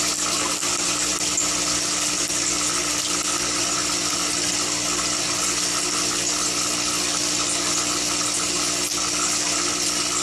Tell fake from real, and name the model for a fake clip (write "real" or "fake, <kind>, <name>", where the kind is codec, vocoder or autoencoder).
real